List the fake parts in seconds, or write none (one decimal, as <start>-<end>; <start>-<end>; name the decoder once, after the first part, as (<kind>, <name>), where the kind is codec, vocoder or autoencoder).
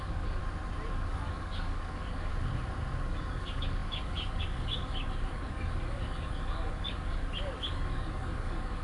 0.0-0.4 (codec, DAC); 0.9-2.3; 3.0-8.8